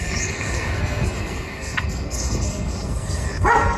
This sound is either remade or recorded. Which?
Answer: remade